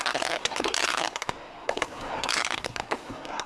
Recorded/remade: remade